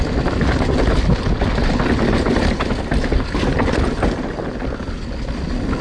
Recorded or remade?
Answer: recorded